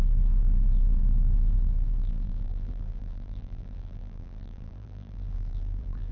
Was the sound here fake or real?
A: fake